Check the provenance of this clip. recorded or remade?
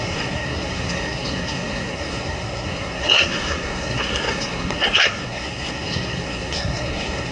remade